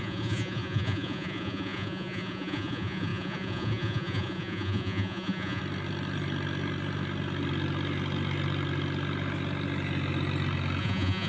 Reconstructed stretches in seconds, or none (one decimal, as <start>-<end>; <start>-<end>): 0.0-5.6; 10.8-11.3